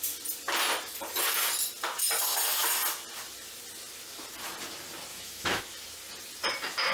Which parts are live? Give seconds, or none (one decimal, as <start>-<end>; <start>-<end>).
0.0-5.1; 5.6-6.9

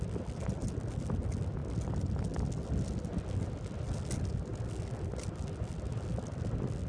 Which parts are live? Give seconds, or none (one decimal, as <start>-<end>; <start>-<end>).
0.0-6.9

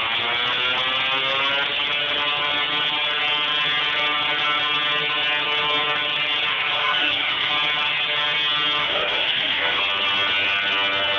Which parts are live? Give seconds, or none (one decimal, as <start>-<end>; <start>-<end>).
0.0-6.5; 7.5-8.8; 9.8-11.2

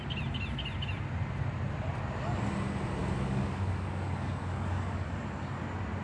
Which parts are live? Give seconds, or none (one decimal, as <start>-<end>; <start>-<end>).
0.0-3.0; 5.1-6.0

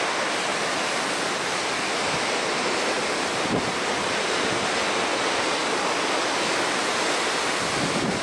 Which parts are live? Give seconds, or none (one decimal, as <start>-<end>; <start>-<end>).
0.0-0.5; 4.8-8.2

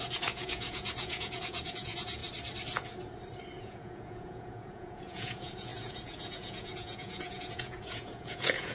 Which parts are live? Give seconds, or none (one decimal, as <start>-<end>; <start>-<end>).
2.2-3.6

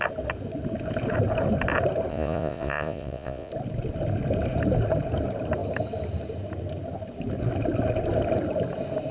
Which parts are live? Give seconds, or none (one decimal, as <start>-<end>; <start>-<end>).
0.0-2.1; 3.5-9.1

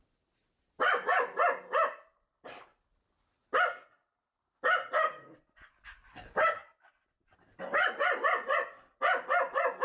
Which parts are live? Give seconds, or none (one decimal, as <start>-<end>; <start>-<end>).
0.0-9.8